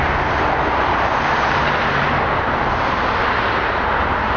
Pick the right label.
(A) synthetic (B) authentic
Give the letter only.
A